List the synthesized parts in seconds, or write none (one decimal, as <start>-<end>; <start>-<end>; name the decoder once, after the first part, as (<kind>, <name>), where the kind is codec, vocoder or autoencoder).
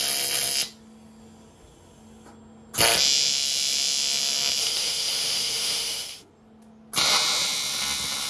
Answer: 4.6-6.3 (autoencoder, DAC-VAE)